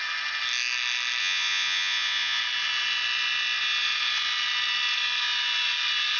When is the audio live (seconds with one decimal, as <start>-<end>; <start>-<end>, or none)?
0.0-1.2; 2.4-6.2